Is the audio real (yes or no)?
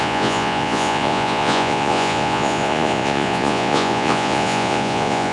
no